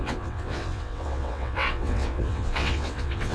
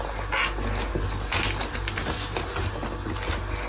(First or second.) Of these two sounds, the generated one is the first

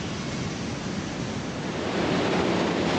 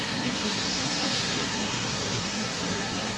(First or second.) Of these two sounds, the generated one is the second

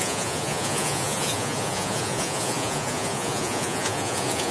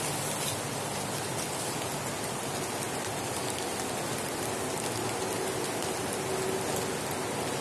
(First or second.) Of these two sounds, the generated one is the first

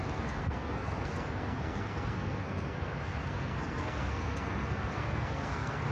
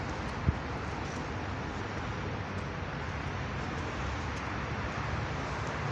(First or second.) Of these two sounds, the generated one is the first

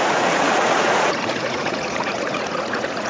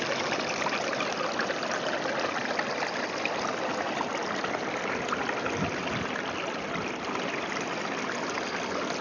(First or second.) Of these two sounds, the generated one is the first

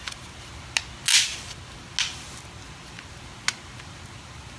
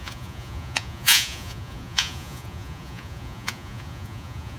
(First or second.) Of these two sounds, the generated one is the second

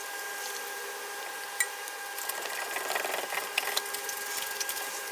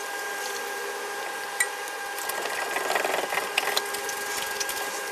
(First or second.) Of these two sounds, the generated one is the first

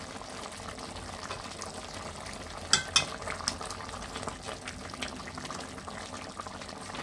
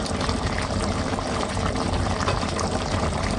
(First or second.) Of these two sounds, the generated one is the second